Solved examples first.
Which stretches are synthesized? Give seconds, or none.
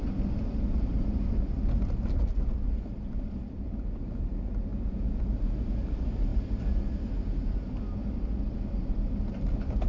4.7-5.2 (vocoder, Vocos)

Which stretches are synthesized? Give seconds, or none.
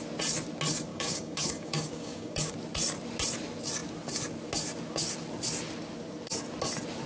0.9-2.5 (codec, DAC)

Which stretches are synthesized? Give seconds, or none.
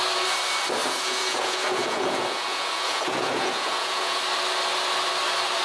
0.8-4.2 (vocoder, Vocos)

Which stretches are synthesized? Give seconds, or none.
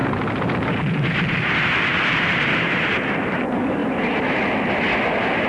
0.0-3.8 (vocoder, BigVGAN v2); 5.0-5.5